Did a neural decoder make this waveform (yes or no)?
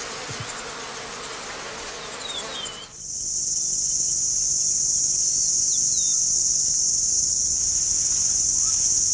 no